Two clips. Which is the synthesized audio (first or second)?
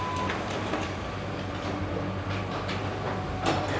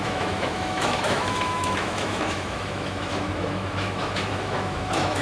second